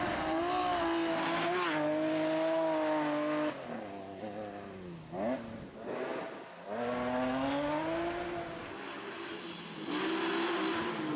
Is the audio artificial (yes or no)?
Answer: no